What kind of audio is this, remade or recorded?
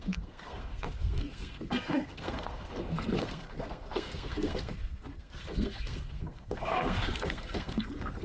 remade